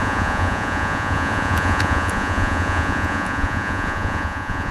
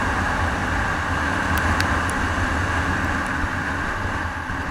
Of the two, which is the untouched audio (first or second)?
second